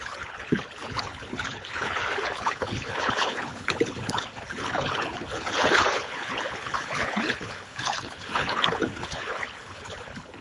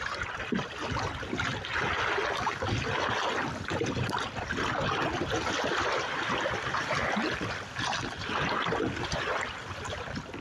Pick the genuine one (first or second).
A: second